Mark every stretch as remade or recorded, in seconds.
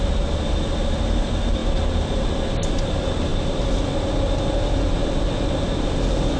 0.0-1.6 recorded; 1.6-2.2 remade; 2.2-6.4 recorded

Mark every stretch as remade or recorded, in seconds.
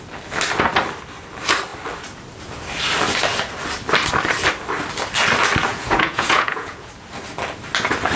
0.0-5.7 recorded; 5.7-6.9 remade; 6.9-8.2 recorded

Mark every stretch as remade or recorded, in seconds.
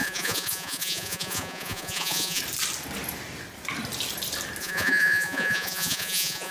0.0-2.4 remade; 2.4-4.6 recorded; 4.6-6.5 remade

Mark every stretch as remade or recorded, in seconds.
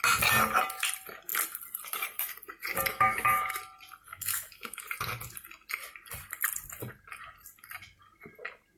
0.0-2.9 recorded; 2.9-3.6 remade; 3.6-4.1 recorded; 4.1-4.8 remade; 4.8-8.8 recorded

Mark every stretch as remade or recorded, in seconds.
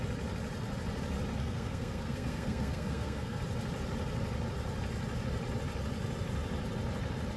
0.0-1.4 recorded; 1.4-3.4 remade; 3.4-7.4 recorded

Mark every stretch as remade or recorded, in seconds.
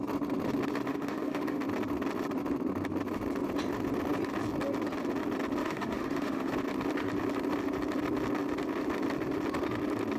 0.0-0.9 recorded; 0.9-1.6 remade; 1.6-5.6 recorded; 5.6-6.5 remade; 6.5-10.2 recorded